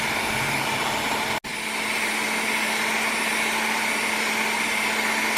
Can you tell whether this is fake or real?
real